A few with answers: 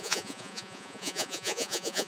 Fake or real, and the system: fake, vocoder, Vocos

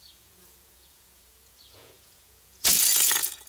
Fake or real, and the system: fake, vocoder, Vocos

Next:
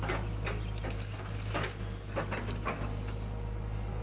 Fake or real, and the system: real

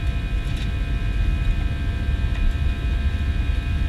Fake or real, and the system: real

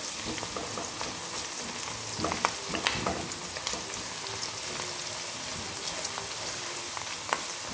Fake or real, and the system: real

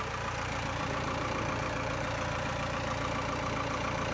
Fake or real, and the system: fake, vocoder, BigVGAN v2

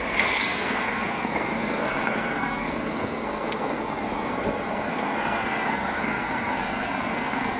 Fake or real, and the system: fake, codec, SNAC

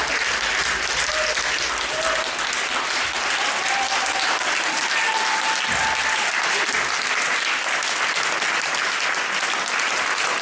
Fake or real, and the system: real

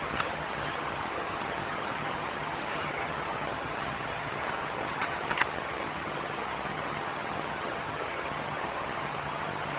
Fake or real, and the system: fake, vocoder, HiFi-GAN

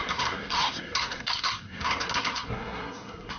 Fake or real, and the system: fake, codec, SNAC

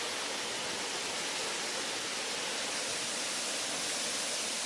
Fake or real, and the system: real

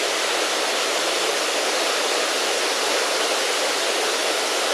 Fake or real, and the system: real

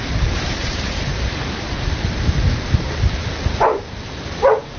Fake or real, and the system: fake, vocoder, BigVGAN v2